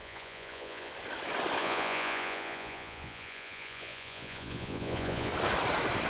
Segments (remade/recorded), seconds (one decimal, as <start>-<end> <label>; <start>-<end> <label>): 0.0-0.9 remade; 0.9-1.6 recorded; 1.6-5.3 remade; 5.3-6.1 recorded